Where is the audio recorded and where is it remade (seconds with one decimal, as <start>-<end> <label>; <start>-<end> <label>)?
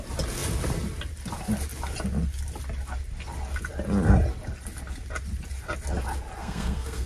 0.0-6.4 recorded; 6.4-7.1 remade